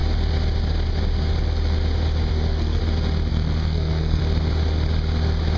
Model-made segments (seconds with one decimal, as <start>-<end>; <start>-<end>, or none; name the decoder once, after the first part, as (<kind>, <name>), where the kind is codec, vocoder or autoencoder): 2.3-2.8 (codec, SNAC); 3.3-4.2